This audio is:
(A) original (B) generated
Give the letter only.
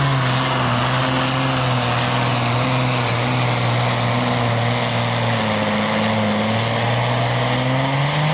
A